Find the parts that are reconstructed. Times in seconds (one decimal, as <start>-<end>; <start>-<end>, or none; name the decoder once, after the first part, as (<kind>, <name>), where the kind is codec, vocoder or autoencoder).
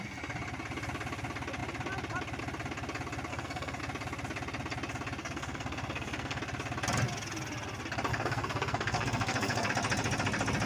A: 3.3-3.8 (codec, SNAC); 5.2-6.4; 8.1-9.7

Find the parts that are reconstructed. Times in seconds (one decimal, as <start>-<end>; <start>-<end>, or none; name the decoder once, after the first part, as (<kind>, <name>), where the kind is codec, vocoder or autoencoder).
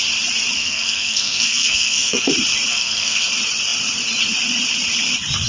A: 0.6-2.3 (codec, SNAC); 2.7-3.3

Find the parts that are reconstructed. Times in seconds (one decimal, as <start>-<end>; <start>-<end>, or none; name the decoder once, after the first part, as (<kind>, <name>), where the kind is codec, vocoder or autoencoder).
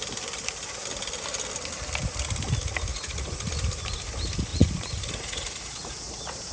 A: 2.9-3.5 (vocoder, Vocos); 4.5-6.5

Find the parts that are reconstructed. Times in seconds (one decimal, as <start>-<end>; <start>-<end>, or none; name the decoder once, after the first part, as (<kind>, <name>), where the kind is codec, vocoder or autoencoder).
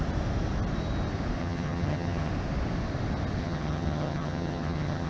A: 1.4-2.3 (vocoder, HiFi-GAN); 3.4-5.1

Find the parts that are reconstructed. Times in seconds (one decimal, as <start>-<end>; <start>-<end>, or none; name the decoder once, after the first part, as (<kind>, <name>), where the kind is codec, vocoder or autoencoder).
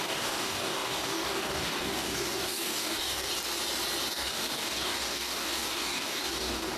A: 0.0-3.3 (codec, DAC); 4.1-6.8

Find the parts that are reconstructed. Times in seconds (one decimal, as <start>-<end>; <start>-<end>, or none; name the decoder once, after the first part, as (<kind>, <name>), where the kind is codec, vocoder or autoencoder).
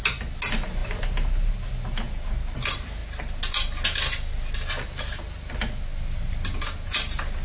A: none